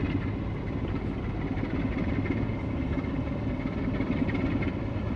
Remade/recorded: recorded